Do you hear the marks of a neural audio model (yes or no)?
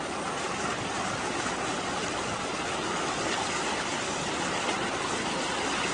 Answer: no